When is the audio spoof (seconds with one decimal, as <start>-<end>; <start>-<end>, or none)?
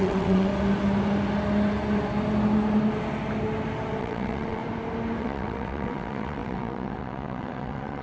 0.0-0.5; 4.0-4.6; 5.2-8.0